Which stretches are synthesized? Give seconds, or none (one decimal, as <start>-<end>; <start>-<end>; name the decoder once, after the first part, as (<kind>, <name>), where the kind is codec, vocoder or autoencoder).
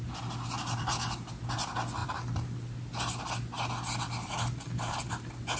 none